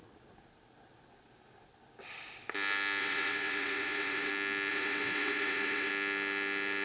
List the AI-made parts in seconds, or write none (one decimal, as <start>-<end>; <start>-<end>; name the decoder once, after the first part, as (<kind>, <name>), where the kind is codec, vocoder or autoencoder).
3.0-4.3 (vocoder, WaveNeXt); 4.7-5.9